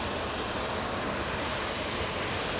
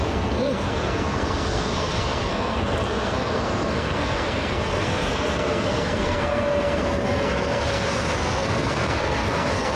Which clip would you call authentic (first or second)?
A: first